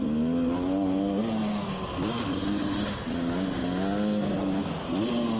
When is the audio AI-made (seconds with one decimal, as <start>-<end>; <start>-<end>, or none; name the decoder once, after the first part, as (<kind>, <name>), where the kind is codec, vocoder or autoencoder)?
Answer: none